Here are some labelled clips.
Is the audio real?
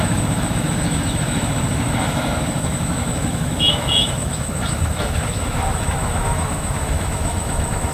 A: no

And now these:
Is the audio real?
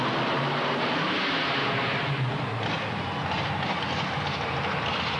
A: yes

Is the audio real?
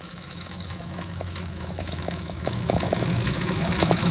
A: no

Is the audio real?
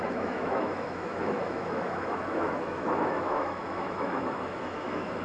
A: no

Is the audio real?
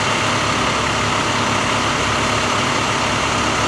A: yes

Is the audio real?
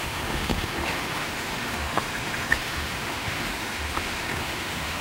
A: no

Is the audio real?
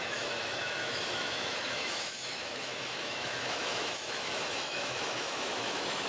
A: no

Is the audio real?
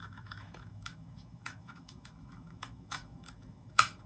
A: no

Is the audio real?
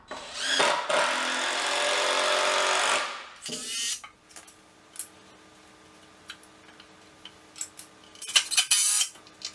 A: yes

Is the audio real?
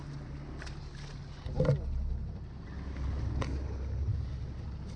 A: yes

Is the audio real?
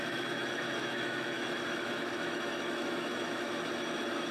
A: no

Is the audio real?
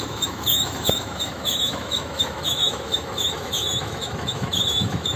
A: no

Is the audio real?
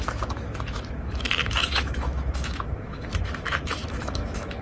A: no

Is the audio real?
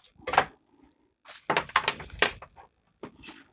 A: yes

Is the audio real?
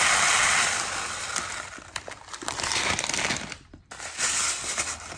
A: yes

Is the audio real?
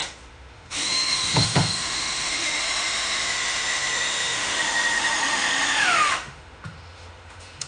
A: no